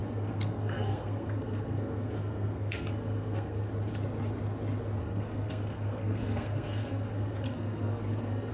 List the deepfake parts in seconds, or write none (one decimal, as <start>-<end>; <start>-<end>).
0.0-3.7; 5.0-8.5